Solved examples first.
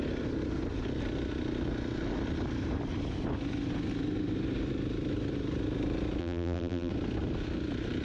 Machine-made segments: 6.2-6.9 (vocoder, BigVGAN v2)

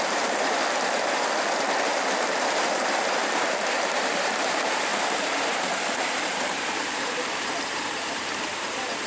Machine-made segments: 0.0-0.6 (vocoder, BigVGAN v2); 1.7-9.1

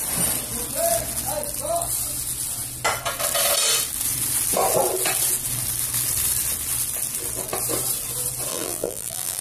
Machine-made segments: 8.5-9.4 (vocoder, BigVGAN v2)

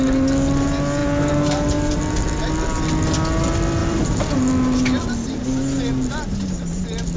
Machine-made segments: 1.0-2.0 (vocoder, BigVGAN v2); 3.8-4.5